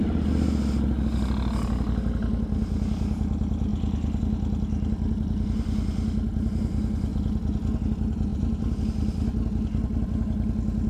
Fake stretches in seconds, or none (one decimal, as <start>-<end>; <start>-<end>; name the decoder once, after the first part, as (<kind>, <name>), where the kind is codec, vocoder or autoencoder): 8.3-8.8 (vocoder, BigVGAN v2)